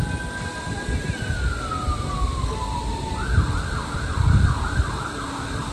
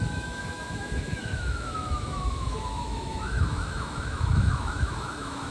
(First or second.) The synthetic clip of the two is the second